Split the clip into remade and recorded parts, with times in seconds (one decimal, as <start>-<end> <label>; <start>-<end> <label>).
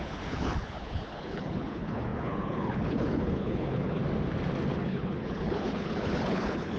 0.0-4.0 remade; 4.0-4.7 recorded; 4.7-6.8 remade